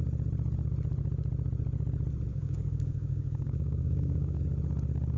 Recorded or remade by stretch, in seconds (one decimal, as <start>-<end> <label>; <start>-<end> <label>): 0.0-2.3 recorded; 2.3-4.4 remade; 4.4-5.2 recorded